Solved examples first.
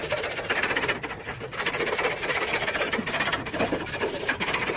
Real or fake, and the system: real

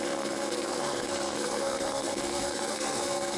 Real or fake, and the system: fake, codec, SNAC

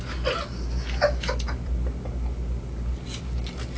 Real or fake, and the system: real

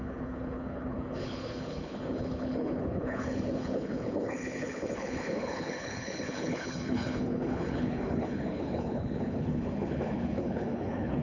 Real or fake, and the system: fake, codec, HILCodec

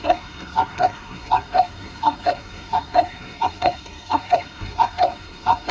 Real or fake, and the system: fake, codec, SNAC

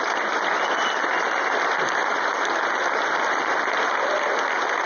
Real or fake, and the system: real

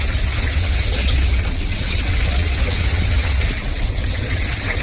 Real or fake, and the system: fake, vocoder, WaveNeXt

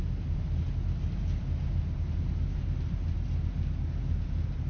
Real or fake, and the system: real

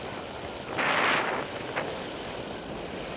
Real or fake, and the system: real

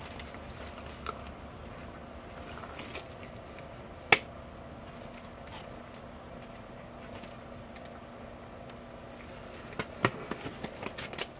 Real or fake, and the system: real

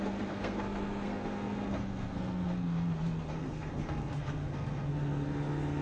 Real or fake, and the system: fake, codec, SNAC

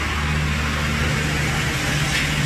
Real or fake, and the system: real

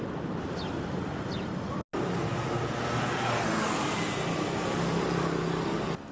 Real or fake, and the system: real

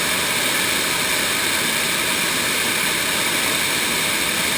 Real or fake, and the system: real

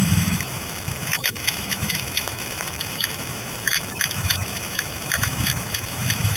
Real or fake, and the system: fake, autoencoder, DAC-VAE